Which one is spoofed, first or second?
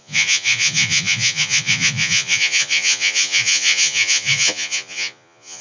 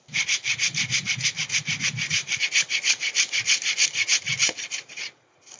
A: first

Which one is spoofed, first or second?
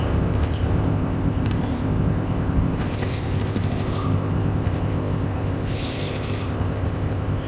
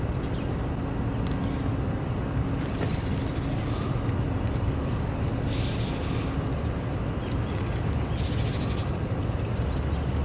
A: first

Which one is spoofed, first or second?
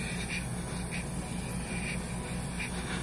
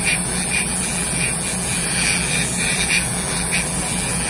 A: second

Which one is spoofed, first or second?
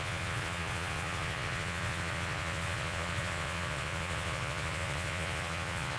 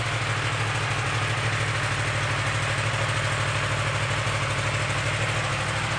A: first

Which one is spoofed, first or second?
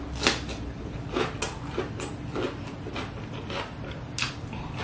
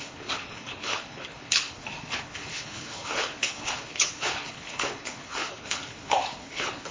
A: second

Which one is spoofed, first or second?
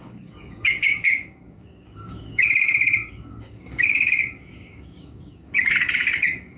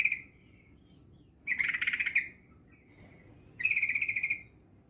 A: first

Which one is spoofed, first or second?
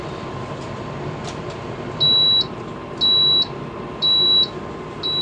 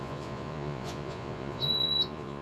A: second